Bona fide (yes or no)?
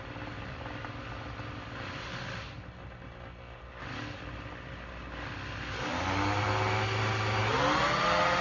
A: yes